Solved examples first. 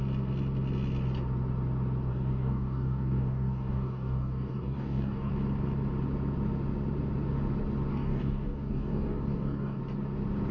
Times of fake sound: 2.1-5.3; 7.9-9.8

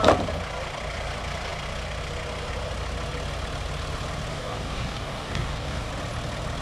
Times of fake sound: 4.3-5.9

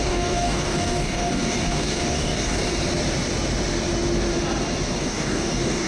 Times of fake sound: 0.0-2.6; 5.0-5.9

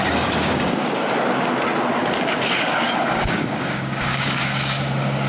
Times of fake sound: 0.0-0.9; 2.0-5.3

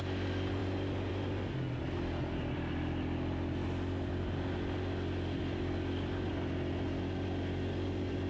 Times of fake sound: none

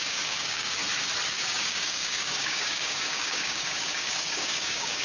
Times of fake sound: 0.0-0.8; 1.3-5.0